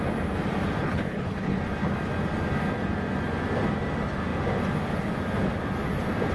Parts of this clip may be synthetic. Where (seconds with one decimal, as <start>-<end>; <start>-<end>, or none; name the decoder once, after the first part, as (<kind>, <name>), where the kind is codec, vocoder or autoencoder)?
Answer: 0.8-1.6 (codec, HILCodec)